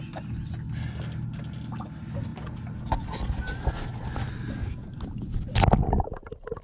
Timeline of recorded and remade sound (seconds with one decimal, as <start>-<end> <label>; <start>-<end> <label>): 0.0-6.6 recorded